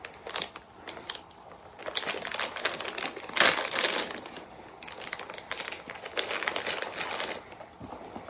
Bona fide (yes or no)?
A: yes